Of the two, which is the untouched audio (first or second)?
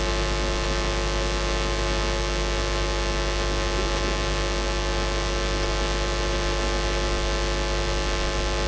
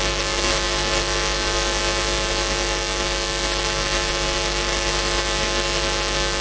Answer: first